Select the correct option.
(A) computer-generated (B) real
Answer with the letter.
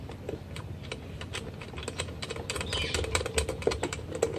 B